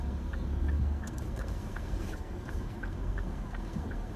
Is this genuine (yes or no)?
no